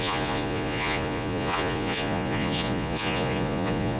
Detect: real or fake fake